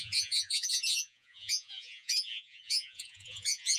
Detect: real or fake fake